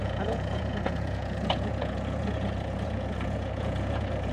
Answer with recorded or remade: remade